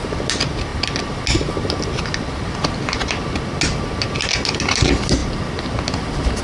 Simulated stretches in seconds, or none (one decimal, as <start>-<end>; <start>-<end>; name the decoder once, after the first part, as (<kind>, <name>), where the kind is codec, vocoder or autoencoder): none